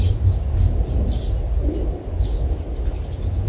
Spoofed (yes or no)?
no